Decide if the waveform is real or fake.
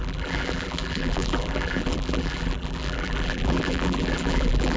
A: fake